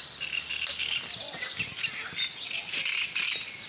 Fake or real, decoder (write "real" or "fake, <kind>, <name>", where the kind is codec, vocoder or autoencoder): real